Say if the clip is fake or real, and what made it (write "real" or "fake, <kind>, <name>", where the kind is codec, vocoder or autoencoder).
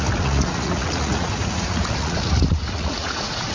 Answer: fake, vocoder, Vocos